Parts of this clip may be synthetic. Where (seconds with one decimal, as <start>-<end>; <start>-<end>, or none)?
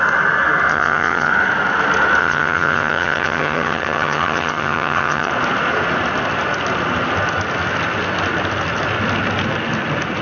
0.7-1.3; 2.2-5.3